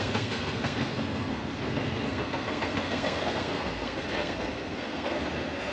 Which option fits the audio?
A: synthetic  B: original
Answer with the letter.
A